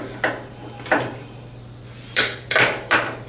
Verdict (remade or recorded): remade